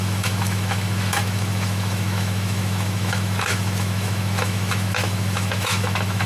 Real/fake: fake